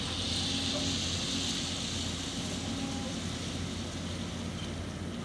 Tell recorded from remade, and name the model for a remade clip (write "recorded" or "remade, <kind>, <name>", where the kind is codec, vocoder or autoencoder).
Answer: recorded